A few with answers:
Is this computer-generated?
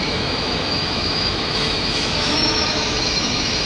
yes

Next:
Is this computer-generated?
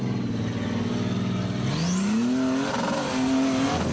no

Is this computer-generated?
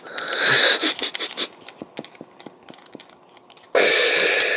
no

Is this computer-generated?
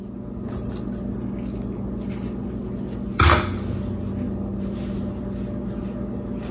no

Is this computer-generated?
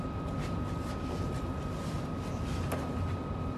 no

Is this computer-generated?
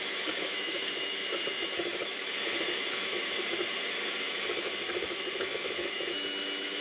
yes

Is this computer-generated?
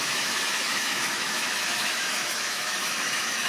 yes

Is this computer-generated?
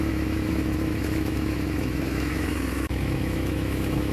yes